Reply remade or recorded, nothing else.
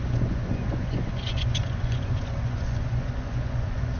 remade